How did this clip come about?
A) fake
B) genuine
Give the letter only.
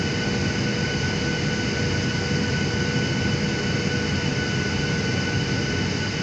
B